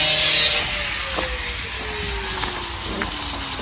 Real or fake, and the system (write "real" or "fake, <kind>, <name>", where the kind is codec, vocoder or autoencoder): real